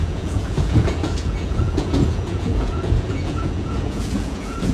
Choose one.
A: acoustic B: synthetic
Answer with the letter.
B